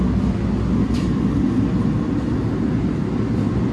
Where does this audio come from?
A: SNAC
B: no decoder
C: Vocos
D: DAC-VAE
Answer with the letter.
B